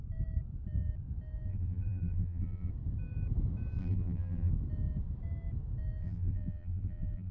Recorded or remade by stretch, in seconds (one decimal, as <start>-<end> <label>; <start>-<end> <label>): 0.0-1.5 recorded; 1.5-2.7 remade; 2.7-3.8 recorded; 3.8-4.5 remade; 4.5-6.0 recorded; 6.0-7.3 remade